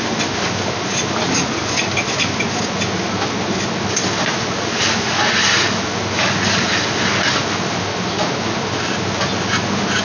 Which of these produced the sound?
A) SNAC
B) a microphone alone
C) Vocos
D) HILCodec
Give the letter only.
B